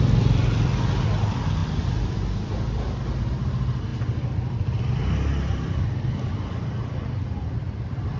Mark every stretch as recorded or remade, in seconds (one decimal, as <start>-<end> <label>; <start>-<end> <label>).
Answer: 0.0-8.2 recorded